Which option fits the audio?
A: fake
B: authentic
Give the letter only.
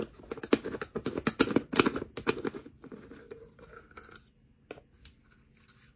B